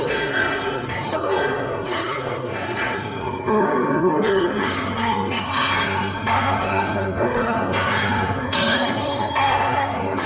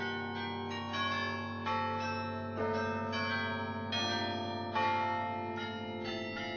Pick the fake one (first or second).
first